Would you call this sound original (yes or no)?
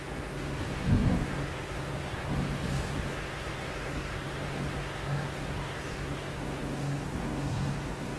no